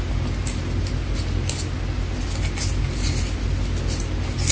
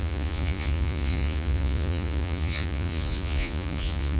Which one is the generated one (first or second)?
second